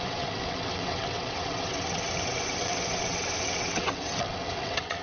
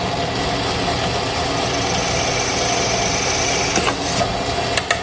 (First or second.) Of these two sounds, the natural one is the second